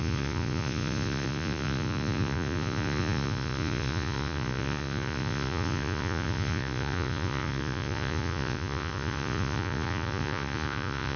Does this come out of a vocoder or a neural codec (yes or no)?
yes